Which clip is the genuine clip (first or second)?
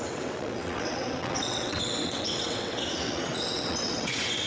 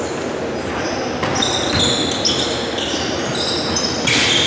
second